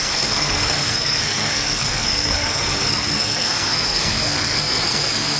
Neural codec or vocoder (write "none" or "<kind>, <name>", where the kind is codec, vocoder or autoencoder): codec, SNAC